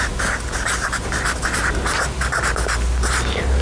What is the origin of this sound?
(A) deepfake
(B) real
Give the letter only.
B